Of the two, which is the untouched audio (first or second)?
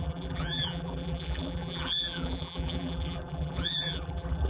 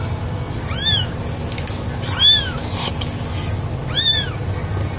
second